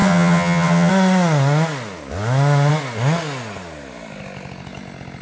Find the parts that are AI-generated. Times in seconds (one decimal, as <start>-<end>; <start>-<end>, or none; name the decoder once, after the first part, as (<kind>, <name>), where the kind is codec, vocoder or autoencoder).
0.0-0.9 (vocoder, HiFi-GAN)